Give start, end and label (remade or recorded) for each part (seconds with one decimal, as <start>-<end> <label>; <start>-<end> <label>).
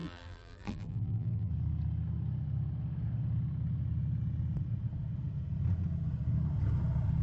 0.0-1.5 remade; 1.5-7.2 recorded